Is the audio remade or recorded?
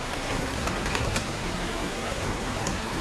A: remade